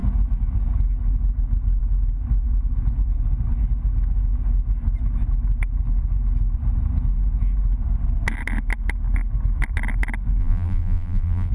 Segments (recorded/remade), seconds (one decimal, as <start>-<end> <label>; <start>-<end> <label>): 0.0-10.4 recorded; 10.4-11.5 remade